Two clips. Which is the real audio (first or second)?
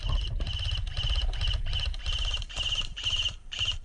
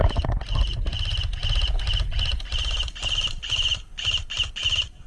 second